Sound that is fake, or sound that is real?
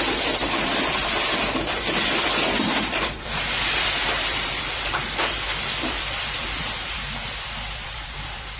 fake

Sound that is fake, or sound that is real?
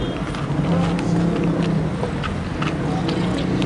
real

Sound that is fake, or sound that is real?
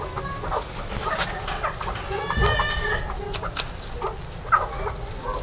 real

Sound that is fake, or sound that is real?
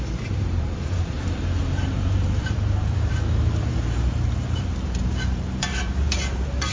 fake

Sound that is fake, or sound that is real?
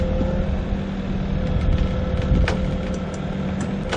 real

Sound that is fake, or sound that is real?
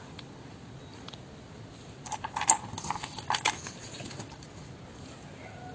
real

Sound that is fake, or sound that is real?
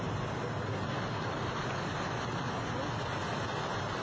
real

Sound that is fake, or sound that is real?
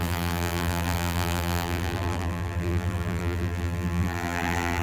fake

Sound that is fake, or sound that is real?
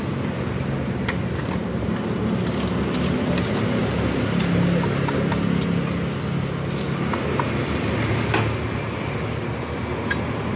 real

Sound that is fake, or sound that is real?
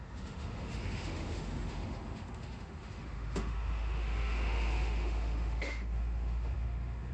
fake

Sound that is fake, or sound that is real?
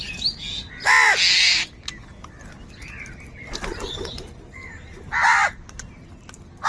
real